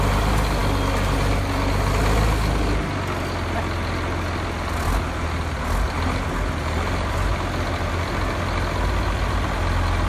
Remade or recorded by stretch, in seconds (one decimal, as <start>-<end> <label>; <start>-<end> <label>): 0.0-10.1 recorded